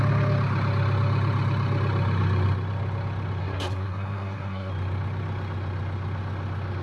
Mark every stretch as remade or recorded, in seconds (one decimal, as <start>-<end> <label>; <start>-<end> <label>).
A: 0.0-3.4 recorded; 3.4-4.7 remade; 4.7-6.8 recorded